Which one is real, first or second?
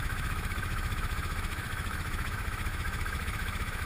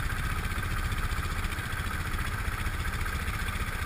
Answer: second